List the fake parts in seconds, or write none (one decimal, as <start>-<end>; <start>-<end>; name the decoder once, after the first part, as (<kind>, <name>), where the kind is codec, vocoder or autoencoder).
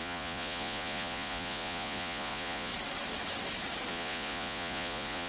0.0-2.7 (vocoder, Vocos); 3.9-5.3